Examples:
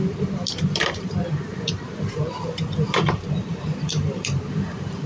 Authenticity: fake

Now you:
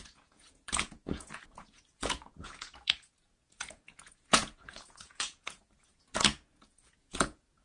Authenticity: fake